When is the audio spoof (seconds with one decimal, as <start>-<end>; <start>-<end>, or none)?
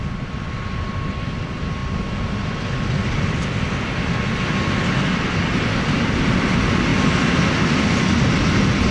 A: none